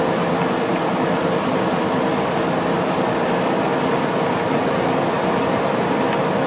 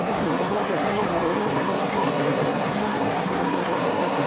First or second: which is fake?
second